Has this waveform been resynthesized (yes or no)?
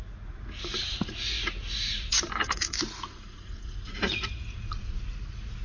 yes